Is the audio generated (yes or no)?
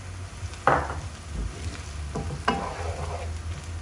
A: no